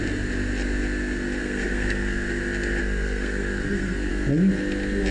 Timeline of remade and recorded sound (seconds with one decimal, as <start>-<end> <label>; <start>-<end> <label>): 0.0-1.4 recorded; 1.4-2.4 remade; 2.4-2.8 recorded; 2.8-4.1 remade; 4.1-5.1 recorded